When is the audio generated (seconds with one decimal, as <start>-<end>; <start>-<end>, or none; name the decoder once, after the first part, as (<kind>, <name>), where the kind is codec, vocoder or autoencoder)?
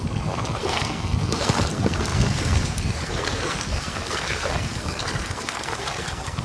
0.0-6.4 (codec, SNAC)